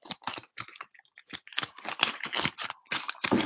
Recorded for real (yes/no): yes